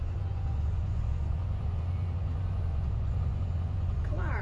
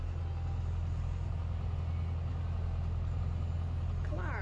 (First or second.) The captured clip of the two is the second